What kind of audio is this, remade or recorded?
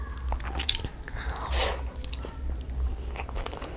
recorded